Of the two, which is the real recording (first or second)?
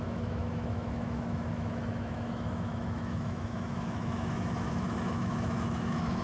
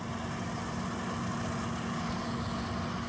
second